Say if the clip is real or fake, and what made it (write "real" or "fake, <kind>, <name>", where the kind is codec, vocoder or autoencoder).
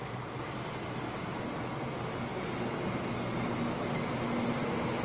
real